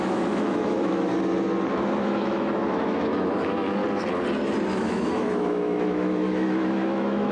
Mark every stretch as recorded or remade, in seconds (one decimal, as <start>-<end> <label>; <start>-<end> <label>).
0.0-1.1 remade; 1.1-1.7 recorded; 1.7-3.8 remade; 3.8-4.7 recorded; 4.7-7.3 remade